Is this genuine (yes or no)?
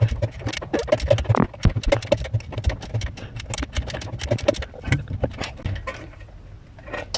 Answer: yes